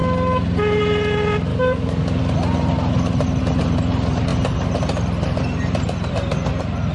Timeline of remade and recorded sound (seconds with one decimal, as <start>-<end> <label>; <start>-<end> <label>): 0.0-1.5 recorded; 1.5-2.2 remade; 2.2-6.9 recorded